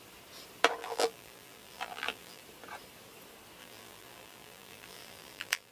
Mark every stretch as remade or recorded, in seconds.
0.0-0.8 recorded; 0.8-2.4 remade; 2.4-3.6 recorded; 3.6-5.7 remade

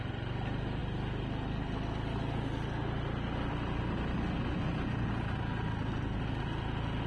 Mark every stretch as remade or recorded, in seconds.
0.0-7.1 recorded

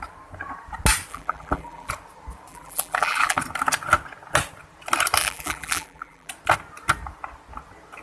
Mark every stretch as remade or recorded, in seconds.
0.0-1.1 recorded; 1.1-1.9 remade; 1.9-2.5 recorded; 2.5-3.4 remade; 3.4-5.2 recorded; 5.2-6.3 remade; 6.3-8.0 recorded